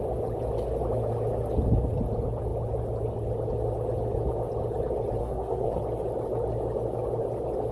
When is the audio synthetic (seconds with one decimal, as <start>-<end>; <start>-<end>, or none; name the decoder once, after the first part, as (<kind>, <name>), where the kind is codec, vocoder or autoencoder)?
5.2-5.8 (codec, SNAC)